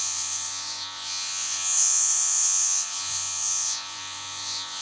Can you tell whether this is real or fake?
fake